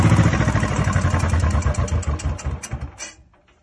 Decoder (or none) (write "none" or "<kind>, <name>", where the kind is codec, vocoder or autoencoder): none